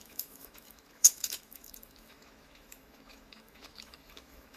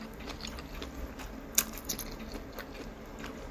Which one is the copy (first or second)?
first